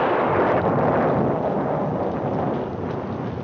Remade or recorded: recorded